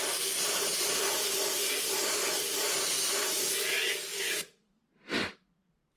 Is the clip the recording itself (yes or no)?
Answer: yes